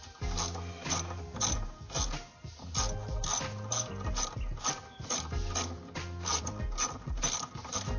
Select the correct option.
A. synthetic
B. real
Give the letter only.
B